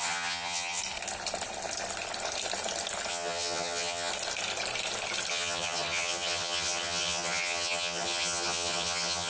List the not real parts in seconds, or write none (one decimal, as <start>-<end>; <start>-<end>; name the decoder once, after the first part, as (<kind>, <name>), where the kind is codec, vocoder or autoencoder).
0.0-0.8 (vocoder, HiFi-GAN); 3.1-4.1; 5.3-9.3